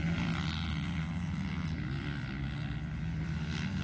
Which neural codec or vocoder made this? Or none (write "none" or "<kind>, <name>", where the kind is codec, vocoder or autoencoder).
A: none